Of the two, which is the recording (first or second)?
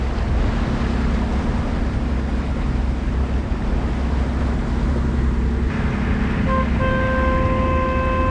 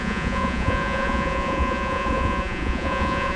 first